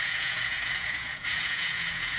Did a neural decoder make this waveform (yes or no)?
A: yes